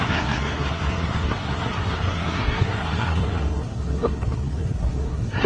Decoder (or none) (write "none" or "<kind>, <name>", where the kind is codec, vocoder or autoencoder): codec, SNAC